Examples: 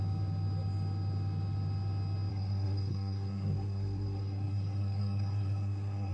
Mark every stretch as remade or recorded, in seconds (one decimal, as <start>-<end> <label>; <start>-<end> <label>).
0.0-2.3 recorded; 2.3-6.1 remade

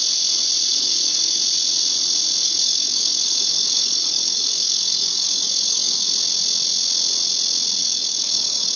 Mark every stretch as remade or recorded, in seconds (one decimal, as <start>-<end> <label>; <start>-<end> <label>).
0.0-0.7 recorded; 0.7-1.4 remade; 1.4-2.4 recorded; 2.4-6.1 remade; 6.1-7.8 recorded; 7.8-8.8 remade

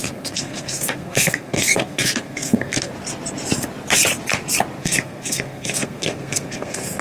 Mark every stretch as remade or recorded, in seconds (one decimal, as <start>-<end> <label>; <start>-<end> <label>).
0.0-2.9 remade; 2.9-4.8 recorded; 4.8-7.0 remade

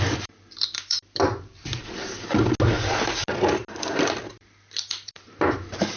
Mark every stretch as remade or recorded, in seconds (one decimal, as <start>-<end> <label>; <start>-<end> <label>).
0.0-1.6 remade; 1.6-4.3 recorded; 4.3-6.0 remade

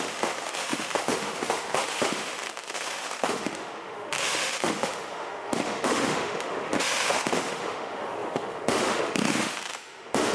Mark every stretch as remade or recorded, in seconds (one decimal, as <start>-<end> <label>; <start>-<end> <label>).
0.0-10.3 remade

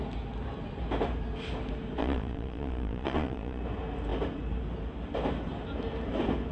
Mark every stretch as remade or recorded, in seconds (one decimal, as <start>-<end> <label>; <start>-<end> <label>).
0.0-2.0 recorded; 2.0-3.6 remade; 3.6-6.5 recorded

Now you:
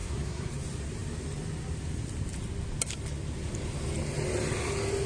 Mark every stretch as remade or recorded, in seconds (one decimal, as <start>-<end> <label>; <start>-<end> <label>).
0.0-0.5 remade; 0.5-5.1 recorded

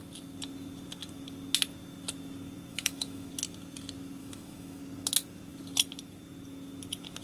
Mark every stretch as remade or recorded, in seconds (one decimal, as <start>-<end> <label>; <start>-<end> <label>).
0.0-2.7 recorded; 2.7-3.3 remade; 3.3-4.2 recorded; 4.2-4.8 remade; 4.8-7.2 recorded